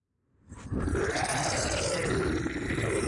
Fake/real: real